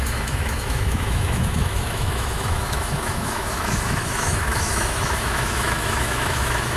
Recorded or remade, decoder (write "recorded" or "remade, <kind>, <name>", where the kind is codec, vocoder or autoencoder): remade, autoencoder, DAC-VAE